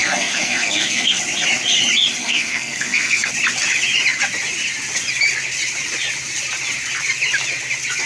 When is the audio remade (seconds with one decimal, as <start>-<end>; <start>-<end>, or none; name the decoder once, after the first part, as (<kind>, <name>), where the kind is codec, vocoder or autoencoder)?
0.0-1.2 (codec, SNAC); 2.2-3.3